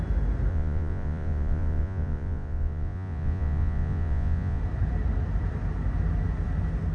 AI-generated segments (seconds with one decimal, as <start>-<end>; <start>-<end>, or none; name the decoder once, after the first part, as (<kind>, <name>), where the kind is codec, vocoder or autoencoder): 0.5-4.6 (vocoder, Vocos)